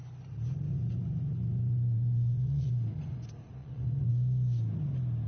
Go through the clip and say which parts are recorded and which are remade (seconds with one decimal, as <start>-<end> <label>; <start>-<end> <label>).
0.0-0.7 recorded; 0.7-2.7 remade; 2.7-3.6 recorded; 3.6-4.1 remade; 4.1-5.3 recorded